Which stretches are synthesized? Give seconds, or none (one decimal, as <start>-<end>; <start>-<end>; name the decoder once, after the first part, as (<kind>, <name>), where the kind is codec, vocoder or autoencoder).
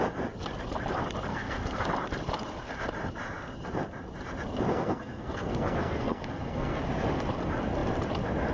1.3-1.8 (codec, SNAC); 4.7-6.8